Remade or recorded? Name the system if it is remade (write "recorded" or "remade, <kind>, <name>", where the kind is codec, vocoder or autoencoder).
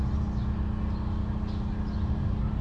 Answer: recorded